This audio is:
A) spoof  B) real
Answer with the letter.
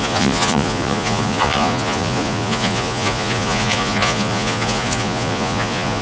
A